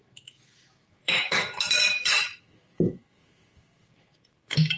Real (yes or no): no